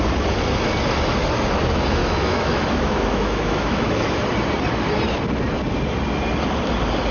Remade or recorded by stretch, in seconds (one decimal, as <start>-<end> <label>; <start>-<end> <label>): 0.0-2.0 recorded; 2.0-4.2 remade; 4.2-7.1 recorded